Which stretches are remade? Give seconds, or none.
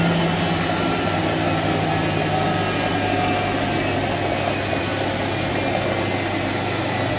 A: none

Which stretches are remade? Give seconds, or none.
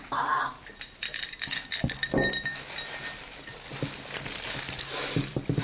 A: 0.0-3.7; 4.7-5.6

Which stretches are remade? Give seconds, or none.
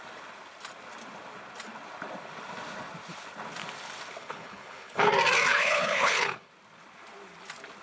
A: 4.2-5.1; 5.5-6.5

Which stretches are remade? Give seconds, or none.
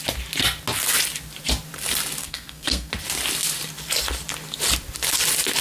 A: 2.2-2.9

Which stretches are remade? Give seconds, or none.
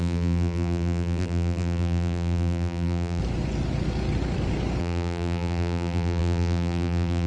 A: 0.0-3.2; 4.8-7.3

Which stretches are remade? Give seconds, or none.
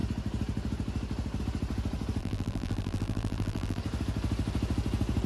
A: 2.2-3.8